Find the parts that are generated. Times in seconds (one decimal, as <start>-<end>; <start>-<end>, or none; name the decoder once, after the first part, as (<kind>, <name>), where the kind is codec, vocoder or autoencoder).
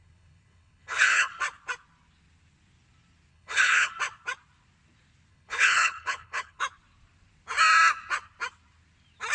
0.0-1.3 (codec, HILCodec); 3.3-3.9; 5.3-6.6